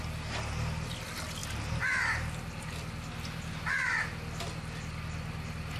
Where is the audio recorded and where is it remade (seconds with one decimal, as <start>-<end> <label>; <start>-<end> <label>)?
0.0-5.8 recorded